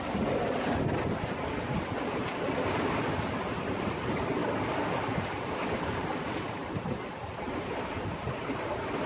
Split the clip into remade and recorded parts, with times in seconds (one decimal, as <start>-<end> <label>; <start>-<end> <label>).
0.0-9.1 recorded